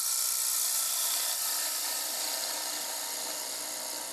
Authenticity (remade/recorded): recorded